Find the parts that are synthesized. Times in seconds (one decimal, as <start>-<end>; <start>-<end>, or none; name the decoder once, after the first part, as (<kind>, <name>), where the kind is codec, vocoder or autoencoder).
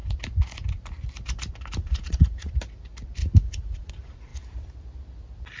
1.8-2.5 (vocoder, Vocos); 3.2-3.9